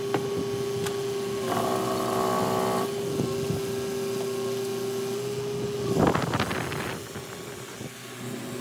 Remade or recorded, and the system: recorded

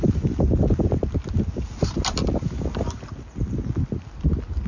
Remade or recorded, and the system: recorded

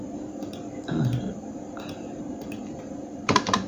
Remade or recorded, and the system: remade, vocoder, BigVGAN v2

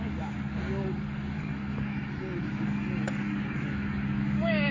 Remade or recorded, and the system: remade, codec, DAC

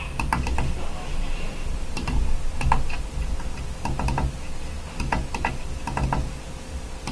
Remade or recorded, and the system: recorded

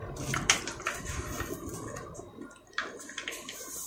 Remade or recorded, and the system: recorded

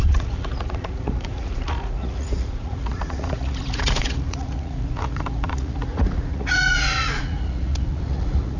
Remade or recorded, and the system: remade, vocoder, Vocos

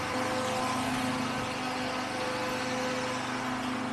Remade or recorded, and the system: recorded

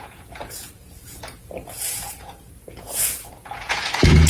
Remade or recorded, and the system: remade, vocoder, Vocos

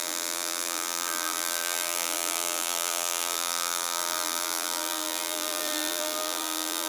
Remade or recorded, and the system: remade, vocoder, BigVGAN v2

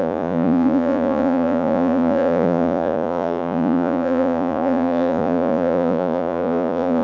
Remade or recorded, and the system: remade, vocoder, Vocos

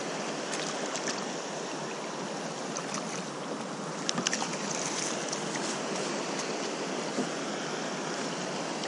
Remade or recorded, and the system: recorded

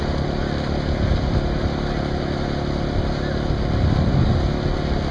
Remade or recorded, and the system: recorded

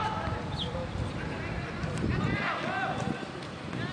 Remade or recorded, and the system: remade, vocoder, BigVGAN v2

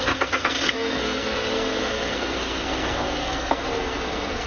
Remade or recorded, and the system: remade, codec, SNAC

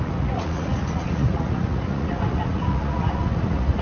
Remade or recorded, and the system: remade, vocoder, Vocos